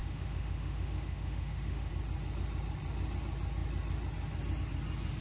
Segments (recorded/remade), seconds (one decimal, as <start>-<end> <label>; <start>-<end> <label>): 0.0-1.9 remade; 1.9-5.2 recorded